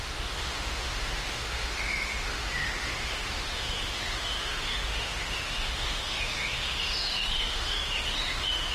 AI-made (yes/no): yes